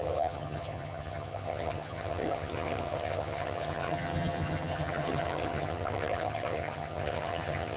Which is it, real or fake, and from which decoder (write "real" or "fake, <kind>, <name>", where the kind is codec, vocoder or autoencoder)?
fake, vocoder, HiFi-GAN